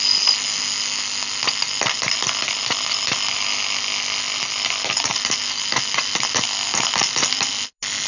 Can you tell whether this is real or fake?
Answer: real